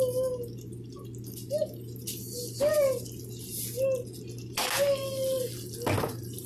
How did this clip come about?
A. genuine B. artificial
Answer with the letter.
A